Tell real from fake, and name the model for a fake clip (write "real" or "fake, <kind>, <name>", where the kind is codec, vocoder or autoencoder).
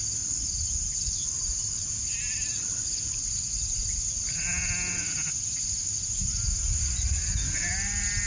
real